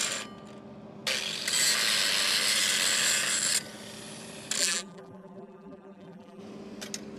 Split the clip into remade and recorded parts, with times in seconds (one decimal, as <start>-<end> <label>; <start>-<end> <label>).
0.0-4.6 recorded; 4.6-6.4 remade; 6.4-7.2 recorded